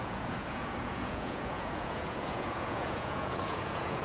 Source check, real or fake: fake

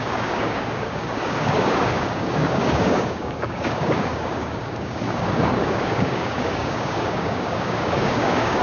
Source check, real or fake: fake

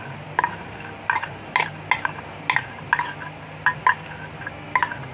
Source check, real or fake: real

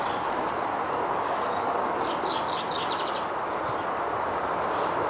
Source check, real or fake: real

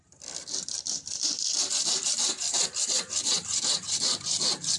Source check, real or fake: fake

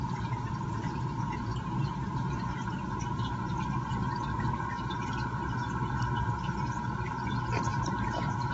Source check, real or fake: real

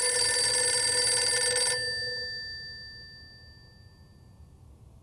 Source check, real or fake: real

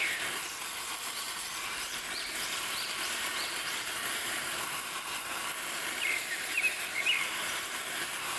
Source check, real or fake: fake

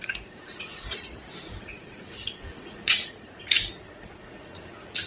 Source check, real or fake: fake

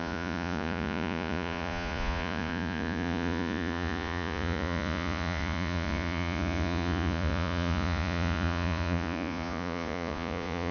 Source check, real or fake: fake